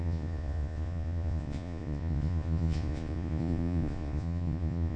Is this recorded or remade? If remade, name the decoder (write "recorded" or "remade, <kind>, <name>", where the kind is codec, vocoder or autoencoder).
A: remade, vocoder, Vocos